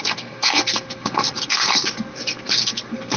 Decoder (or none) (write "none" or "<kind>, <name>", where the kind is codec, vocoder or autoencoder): codec, SNAC